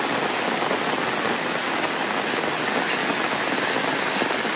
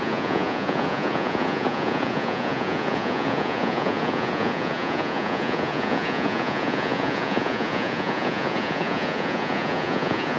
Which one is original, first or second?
first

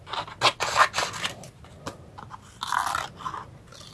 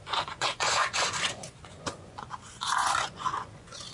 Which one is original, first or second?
first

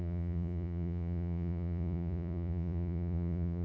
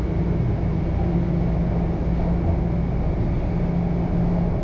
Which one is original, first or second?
second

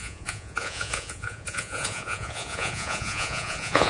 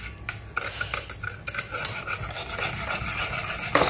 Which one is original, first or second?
second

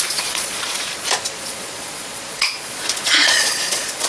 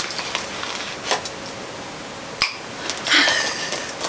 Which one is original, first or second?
second